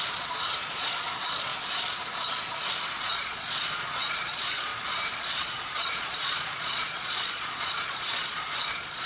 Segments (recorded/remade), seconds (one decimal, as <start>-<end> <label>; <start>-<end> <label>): 0.0-1.5 remade; 1.5-3.0 recorded; 3.0-4.7 remade; 4.7-5.2 recorded; 5.2-9.1 remade